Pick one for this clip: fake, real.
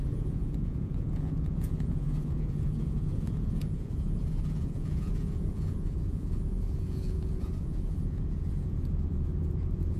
fake